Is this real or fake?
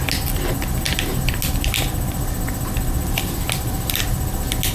real